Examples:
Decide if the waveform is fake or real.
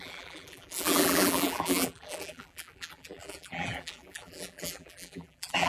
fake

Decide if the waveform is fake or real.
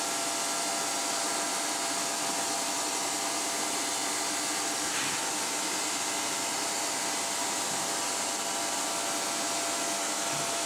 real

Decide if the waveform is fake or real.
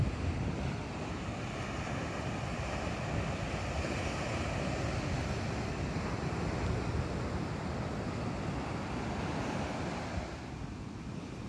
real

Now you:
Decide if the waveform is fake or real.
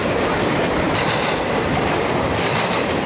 fake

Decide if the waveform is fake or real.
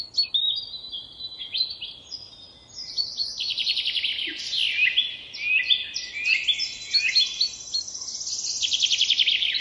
real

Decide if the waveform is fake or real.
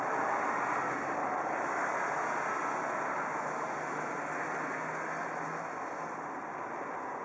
real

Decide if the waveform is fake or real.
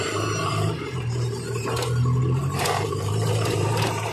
fake